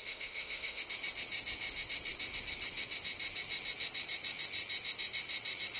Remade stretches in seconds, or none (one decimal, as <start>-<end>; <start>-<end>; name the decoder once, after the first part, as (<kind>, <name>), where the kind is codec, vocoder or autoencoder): 0.0-0.8 (autoencoder, DAC-VAE)